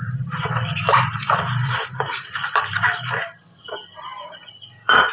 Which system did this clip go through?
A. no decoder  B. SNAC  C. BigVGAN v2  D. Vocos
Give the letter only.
C